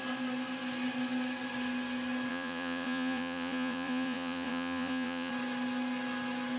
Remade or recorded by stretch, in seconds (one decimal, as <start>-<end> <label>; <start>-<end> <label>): 0.0-2.3 recorded; 2.3-5.3 remade; 5.3-6.6 recorded